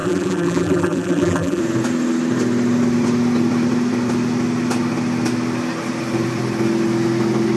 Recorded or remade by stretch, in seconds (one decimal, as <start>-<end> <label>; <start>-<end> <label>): 0.0-1.6 remade; 1.6-7.6 recorded